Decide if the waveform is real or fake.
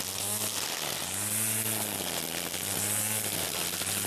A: real